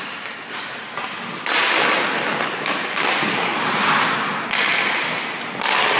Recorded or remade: recorded